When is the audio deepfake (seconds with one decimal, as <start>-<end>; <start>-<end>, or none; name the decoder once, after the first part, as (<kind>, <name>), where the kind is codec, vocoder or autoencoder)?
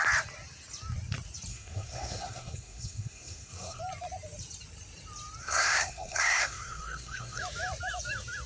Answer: 1.5-3.8 (codec, SNAC); 5.4-7.4